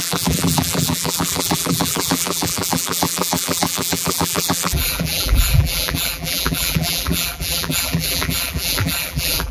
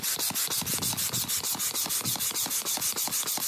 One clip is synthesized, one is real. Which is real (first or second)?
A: second